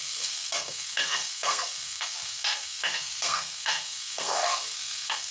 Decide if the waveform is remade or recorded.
remade